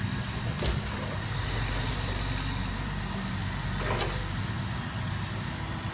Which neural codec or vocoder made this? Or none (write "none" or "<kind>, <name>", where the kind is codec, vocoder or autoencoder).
none